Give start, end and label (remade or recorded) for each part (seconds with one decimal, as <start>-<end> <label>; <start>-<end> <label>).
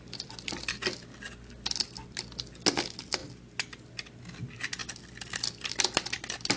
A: 0.0-6.6 recorded